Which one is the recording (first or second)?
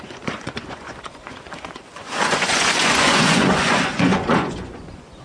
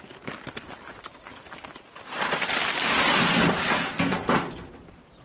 second